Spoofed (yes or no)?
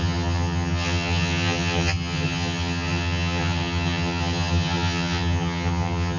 yes